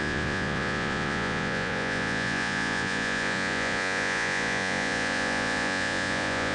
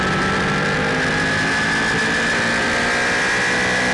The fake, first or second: first